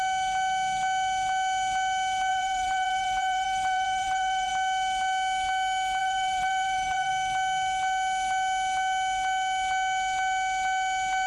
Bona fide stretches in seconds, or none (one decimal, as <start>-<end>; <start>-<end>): 0.0-2.3; 4.5-6.0; 7.1-11.3